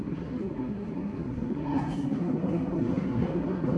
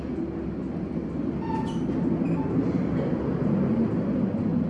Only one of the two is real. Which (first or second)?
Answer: second